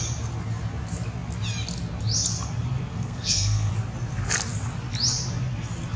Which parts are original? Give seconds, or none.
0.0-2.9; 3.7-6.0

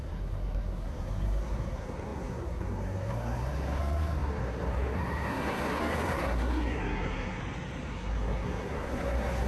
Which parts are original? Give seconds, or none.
7.4-7.9

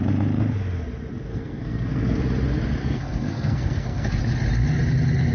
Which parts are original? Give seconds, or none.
0.0-1.3; 2.2-2.8; 4.2-5.3

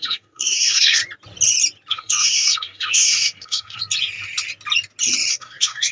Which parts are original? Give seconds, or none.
1.0-1.9; 3.8-5.3

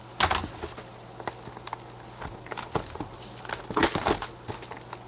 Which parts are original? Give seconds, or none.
0.0-5.1

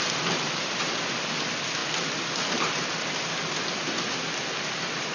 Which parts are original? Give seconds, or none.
0.0-5.1